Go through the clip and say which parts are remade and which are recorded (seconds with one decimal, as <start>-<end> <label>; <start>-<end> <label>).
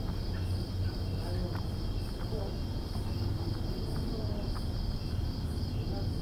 0.0-6.2 recorded